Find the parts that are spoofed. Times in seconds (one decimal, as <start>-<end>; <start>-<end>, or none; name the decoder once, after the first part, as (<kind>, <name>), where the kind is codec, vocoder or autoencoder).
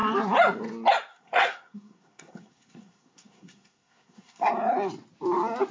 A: 1.1-4.5 (codec, SNAC)